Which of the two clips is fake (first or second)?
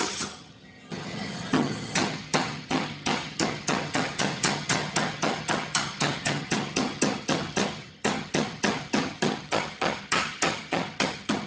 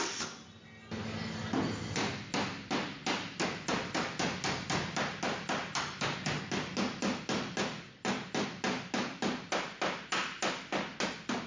first